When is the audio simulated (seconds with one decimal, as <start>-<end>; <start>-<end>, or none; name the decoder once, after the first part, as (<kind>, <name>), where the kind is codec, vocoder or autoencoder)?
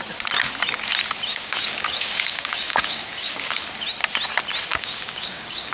1.3-3.6 (codec, DAC); 4.7-5.7